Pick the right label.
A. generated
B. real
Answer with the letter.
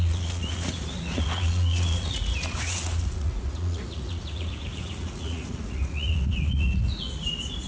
A